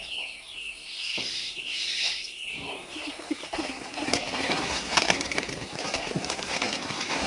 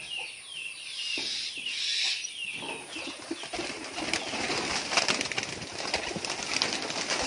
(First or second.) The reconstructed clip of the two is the first